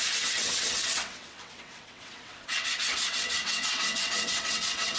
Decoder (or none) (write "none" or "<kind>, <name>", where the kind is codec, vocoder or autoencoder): vocoder, WaveNeXt